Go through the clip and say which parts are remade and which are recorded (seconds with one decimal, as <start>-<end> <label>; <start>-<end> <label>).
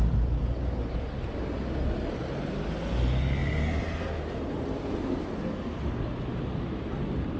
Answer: 0.0-7.4 recorded